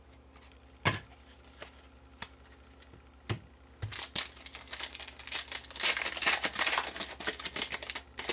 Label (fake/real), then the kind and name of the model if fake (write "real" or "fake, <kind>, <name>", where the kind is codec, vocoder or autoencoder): real